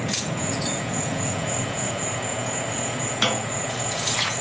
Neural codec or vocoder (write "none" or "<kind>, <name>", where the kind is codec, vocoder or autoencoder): vocoder, Vocos